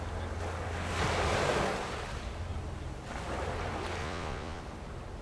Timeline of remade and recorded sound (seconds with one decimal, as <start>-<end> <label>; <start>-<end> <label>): 0.0-4.0 recorded; 4.0-4.6 remade; 4.6-5.2 recorded